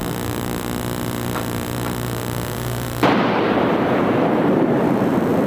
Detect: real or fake fake